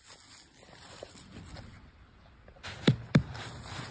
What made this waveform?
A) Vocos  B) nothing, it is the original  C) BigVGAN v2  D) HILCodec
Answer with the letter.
B